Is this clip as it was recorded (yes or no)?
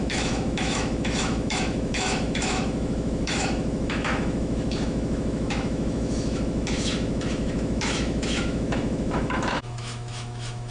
no